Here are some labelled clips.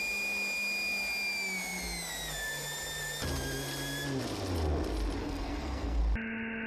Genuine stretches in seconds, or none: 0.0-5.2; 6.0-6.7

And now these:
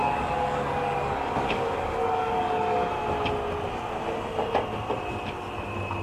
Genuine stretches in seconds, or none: 2.9-6.0

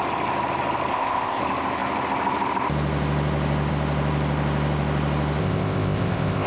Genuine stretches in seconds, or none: 0.0-0.9; 1.4-5.4